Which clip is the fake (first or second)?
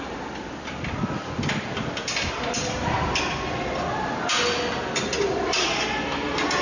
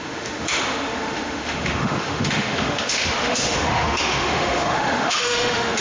second